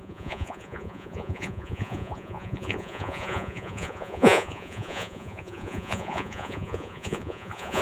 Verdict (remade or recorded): remade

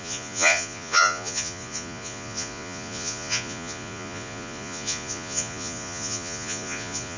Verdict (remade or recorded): remade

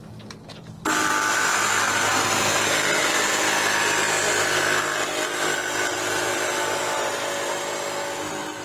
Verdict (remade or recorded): recorded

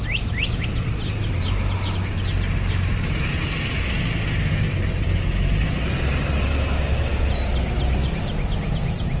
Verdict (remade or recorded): recorded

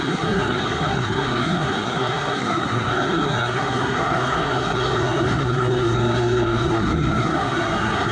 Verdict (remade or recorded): remade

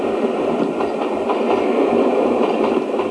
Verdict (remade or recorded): recorded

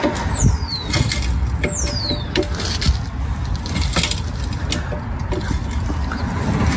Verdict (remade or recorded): recorded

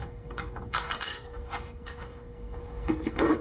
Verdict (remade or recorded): remade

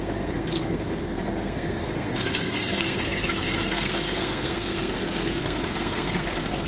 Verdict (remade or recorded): remade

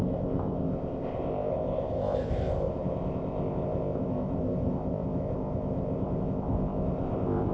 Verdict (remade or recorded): remade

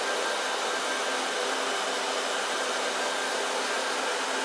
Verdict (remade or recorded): recorded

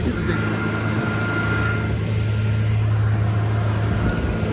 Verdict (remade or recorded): recorded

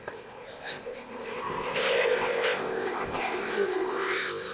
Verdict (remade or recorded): remade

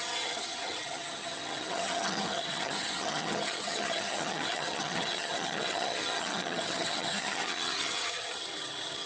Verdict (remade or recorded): remade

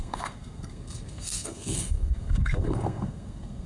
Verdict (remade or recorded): remade